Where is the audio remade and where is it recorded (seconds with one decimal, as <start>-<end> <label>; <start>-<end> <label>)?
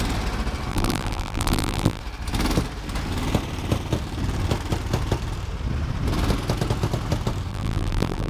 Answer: 0.0-0.7 recorded; 0.7-2.0 remade; 2.0-7.5 recorded; 7.5-8.3 remade